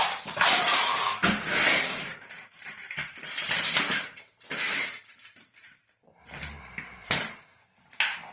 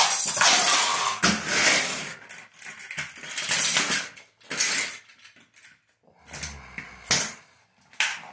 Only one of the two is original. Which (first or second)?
second